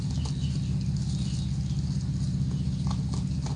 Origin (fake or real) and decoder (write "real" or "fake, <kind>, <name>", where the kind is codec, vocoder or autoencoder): real